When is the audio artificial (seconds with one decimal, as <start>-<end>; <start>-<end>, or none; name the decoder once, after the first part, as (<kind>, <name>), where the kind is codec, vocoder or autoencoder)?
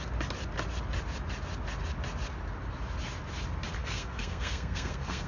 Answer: 3.8-5.3 (codec, SNAC)